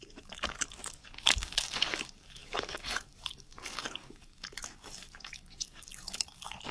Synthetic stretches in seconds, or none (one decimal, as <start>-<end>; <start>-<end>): 0.0-6.7